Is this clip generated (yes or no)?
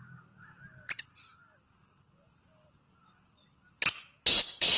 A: no